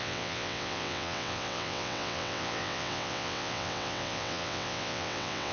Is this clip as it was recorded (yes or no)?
no